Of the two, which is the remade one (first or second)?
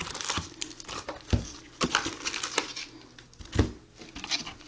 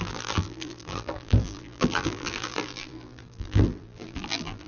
second